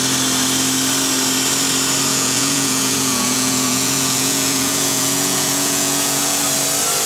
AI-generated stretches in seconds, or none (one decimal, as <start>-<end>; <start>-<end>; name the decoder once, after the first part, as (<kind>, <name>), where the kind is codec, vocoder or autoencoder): 2.1-6.4 (vocoder, Vocos)